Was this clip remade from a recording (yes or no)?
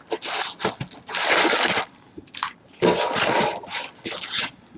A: no